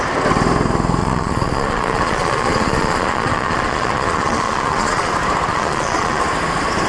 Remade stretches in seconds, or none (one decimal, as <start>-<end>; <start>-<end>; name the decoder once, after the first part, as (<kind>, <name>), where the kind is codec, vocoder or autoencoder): 1.0-5.1 (vocoder, Vocos); 5.5-6.2